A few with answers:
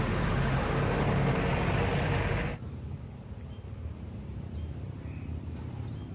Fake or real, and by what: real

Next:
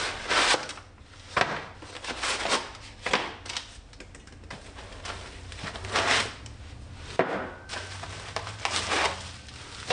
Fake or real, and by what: real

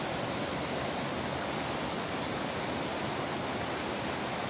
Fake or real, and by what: real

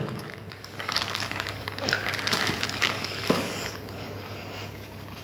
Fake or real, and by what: fake, codec, DAC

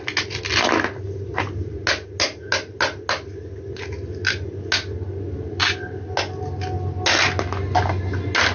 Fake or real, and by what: real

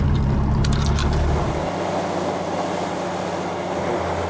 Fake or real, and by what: real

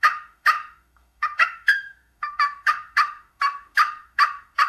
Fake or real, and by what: fake, autoencoder, DAC-VAE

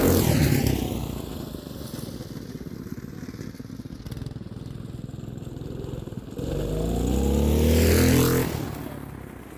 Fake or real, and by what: real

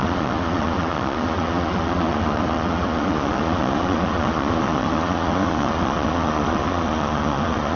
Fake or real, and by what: fake, vocoder, Vocos